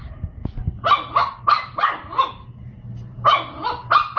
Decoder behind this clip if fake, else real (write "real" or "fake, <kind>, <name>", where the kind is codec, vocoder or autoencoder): real